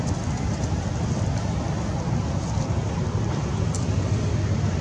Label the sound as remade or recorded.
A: recorded